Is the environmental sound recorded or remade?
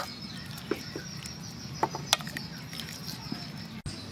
recorded